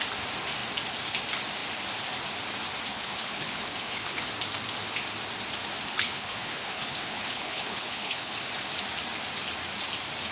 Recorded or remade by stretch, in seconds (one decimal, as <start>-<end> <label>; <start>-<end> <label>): 0.0-2.9 recorded; 2.9-4.3 remade; 4.3-5.9 recorded; 5.9-8.3 remade; 8.3-10.3 recorded